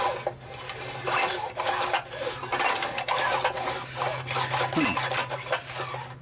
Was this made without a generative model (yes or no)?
yes